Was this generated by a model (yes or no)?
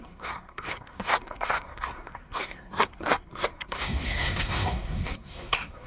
yes